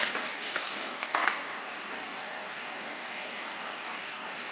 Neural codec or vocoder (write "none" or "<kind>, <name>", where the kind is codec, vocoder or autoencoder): codec, DAC